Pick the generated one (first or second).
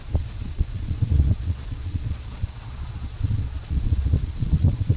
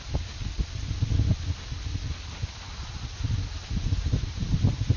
first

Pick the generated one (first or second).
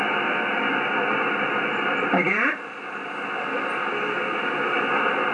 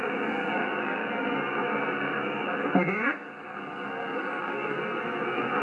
second